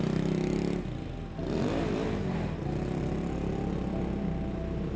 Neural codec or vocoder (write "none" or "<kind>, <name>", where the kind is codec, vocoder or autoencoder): none